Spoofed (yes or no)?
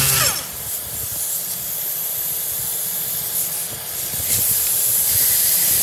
yes